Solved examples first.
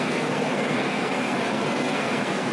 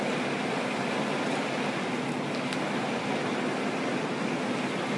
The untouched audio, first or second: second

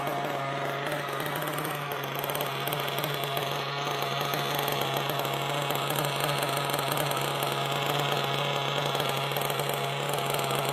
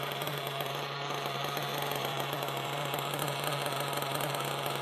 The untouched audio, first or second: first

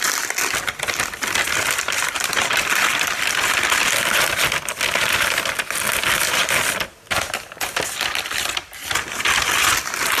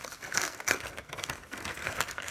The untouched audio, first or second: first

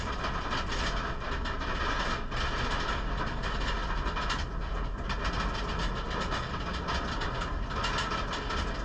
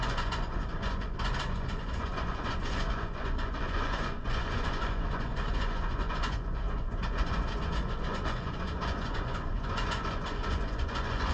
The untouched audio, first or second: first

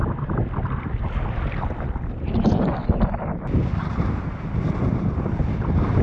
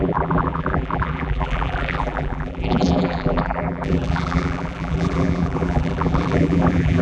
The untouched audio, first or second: first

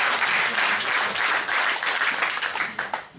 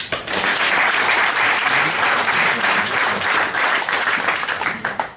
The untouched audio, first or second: first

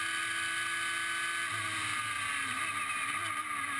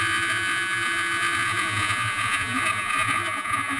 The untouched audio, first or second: first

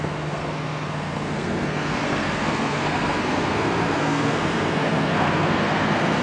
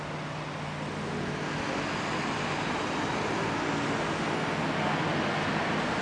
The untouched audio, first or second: second